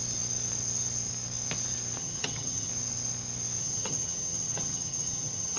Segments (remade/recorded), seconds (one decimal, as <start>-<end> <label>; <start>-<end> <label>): 0.0-2.0 recorded; 2.0-2.7 remade; 2.7-3.6 recorded; 3.6-5.6 remade